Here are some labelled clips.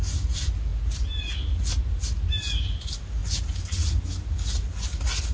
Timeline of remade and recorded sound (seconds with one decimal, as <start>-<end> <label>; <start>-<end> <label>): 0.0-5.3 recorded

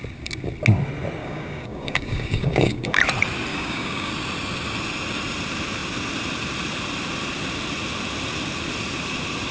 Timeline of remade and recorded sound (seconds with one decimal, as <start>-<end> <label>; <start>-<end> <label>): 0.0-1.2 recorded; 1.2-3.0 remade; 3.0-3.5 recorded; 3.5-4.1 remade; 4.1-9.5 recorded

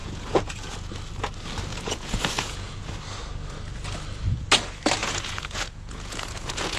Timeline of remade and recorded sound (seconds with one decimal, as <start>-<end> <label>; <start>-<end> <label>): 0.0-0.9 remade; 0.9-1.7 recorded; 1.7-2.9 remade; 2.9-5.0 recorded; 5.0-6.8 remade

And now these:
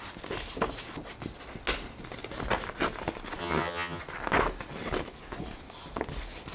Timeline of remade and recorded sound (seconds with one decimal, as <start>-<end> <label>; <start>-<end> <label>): 0.0-3.4 recorded; 3.4-4.0 remade; 4.0-6.5 recorded